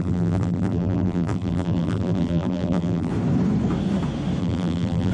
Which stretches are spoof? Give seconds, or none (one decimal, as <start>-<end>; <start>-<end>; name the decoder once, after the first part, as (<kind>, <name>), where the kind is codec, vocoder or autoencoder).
0.0-3.1 (vocoder, BigVGAN v2); 4.4-5.1